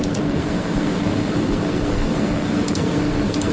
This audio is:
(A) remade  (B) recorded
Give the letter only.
A